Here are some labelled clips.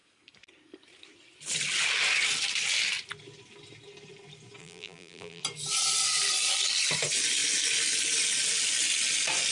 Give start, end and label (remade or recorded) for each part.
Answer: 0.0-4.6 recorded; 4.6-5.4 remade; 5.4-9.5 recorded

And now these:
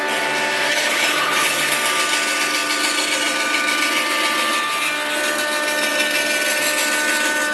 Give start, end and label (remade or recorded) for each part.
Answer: 0.0-0.7 recorded; 0.7-1.7 remade; 1.7-7.5 recorded

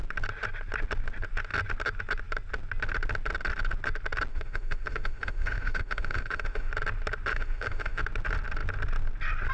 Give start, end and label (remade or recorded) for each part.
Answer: 0.0-4.3 recorded; 4.3-6.7 remade; 6.7-7.3 recorded; 7.3-8.0 remade; 8.0-9.5 recorded

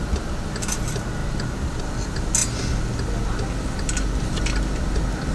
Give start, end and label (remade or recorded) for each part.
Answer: 0.0-5.3 recorded

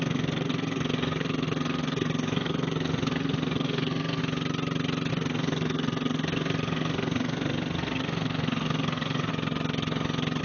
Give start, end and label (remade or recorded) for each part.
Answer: 0.0-4.2 remade; 4.2-5.1 recorded; 5.1-9.3 remade; 9.3-10.4 recorded

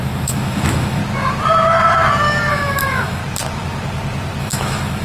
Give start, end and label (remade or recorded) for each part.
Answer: 0.0-1.0 remade; 1.0-2.5 recorded; 2.5-3.2 remade; 3.2-4.4 recorded; 4.4-5.0 remade

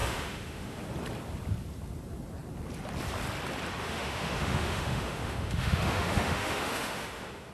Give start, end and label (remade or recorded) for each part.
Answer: 0.0-0.8 remade; 0.8-3.8 recorded; 3.8-7.5 remade

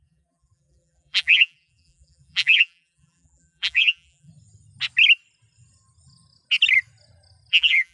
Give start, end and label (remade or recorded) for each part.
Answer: 0.0-4.3 remade; 4.3-7.5 recorded; 7.5-7.9 remade